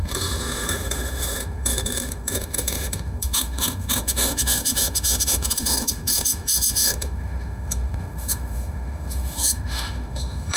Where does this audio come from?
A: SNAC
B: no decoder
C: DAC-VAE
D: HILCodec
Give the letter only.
C